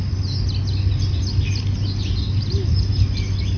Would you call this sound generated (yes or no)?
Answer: no